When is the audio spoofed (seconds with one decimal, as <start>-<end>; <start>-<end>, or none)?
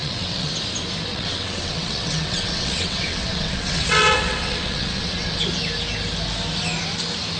0.0-0.5; 1.1-5.4